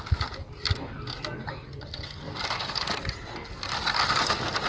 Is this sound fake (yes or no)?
no